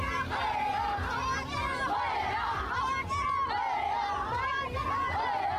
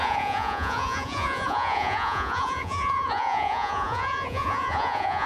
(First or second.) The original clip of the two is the first